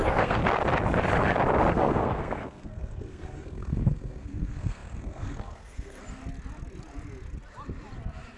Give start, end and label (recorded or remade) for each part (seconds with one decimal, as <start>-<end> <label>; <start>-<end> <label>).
0.0-0.4 remade; 0.4-1.7 recorded; 1.7-6.0 remade; 6.0-8.4 recorded